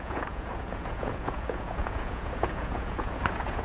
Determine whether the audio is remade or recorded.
remade